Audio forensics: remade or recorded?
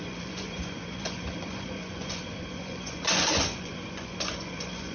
remade